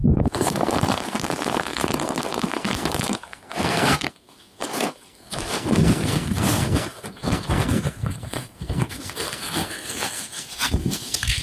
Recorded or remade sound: remade